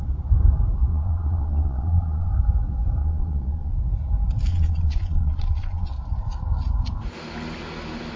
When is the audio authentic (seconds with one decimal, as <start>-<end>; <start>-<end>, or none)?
0.0-0.9; 2.3-3.0; 3.7-4.5; 5.9-8.2